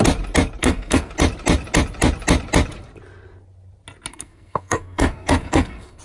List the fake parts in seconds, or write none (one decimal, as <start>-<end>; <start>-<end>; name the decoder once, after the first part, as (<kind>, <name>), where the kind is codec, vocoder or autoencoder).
0.6-1.1 (codec, SNAC); 4.1-6.0

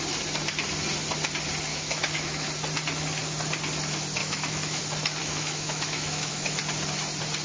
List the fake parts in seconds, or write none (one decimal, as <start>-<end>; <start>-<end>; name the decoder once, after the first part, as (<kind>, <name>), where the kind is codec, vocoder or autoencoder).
1.7-2.5 (autoencoder, DAC-VAE); 4.2-4.8; 5.2-6.6